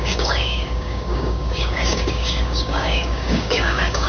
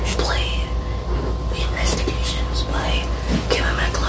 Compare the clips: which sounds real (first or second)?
second